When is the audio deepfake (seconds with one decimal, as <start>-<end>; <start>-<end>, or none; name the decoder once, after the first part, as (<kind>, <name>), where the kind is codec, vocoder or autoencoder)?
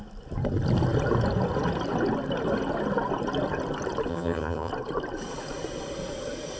4.1-4.7 (vocoder, HiFi-GAN)